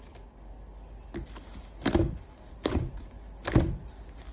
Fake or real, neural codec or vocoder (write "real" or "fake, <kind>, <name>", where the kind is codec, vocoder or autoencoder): real